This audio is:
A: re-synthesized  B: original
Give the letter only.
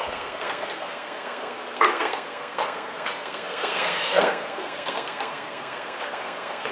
A